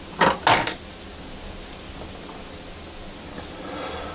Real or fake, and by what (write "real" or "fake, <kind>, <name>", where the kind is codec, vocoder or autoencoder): real